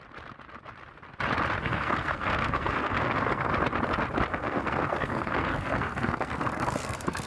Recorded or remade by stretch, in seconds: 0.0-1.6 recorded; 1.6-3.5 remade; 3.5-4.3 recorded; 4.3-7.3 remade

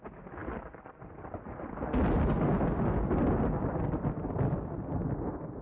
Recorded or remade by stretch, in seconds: 0.0-5.6 recorded

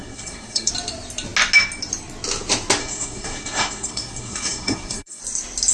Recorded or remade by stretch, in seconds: 0.0-0.7 remade; 0.7-2.8 recorded; 2.8-5.2 remade; 5.2-5.7 recorded